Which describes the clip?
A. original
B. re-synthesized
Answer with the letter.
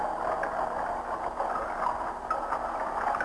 A